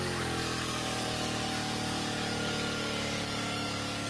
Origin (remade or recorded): remade